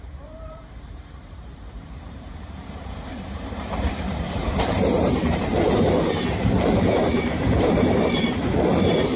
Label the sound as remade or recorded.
remade